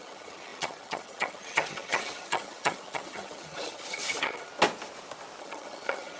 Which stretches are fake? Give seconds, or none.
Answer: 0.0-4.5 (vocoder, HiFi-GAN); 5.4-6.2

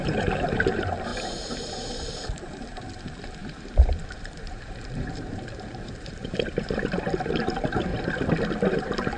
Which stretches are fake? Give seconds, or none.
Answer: 0.0-7.9 (vocoder, BigVGAN v2); 8.7-9.2

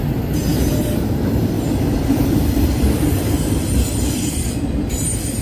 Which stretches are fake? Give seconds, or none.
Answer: 0.0-5.4 (vocoder, BigVGAN v2)

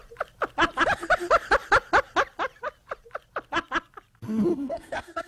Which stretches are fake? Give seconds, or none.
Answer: 4.5-5.3 (codec, SNAC)